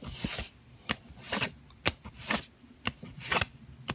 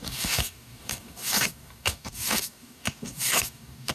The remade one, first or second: second